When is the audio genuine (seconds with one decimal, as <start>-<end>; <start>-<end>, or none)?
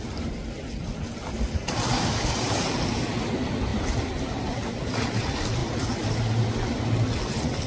0.0-1.6; 3.3-3.7; 4.7-5.6; 6.2-7.7